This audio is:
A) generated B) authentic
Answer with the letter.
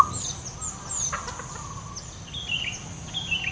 B